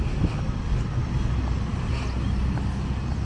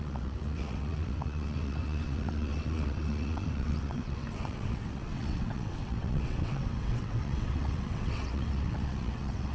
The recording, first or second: first